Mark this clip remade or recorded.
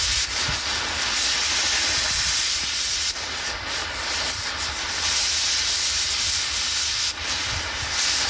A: recorded